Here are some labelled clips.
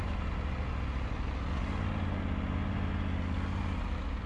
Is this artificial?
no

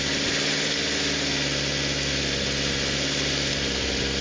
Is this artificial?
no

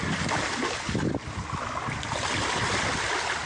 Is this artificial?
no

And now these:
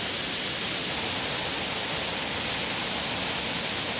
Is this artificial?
no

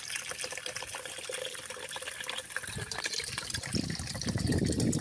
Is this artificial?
no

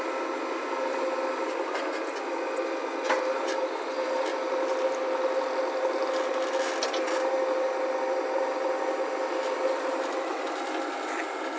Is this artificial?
no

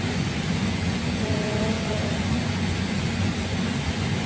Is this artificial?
yes